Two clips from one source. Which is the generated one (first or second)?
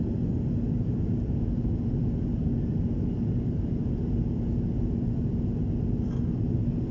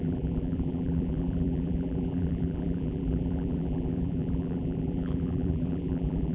second